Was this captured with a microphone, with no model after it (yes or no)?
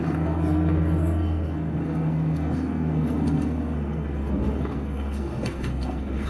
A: no